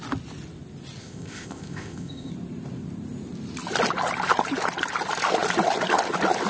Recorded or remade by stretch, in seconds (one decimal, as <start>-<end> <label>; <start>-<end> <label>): 0.0-1.0 recorded; 1.0-2.3 remade; 2.3-6.5 recorded